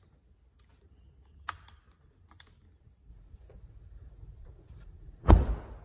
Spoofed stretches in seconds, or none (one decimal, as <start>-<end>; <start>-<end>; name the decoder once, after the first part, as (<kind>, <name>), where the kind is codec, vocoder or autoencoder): 3.1-5.3 (vocoder, Vocos)